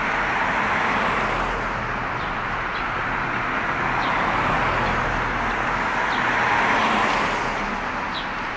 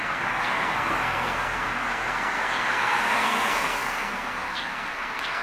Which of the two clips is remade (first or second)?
second